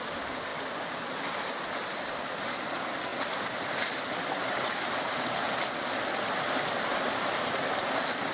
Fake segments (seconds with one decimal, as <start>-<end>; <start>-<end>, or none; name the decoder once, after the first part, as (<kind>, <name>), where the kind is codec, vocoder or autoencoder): none